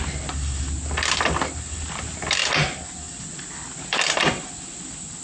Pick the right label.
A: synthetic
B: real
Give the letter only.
A